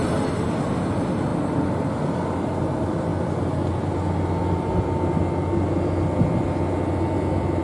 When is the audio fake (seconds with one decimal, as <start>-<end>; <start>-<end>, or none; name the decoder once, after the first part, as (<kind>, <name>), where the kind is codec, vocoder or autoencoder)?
none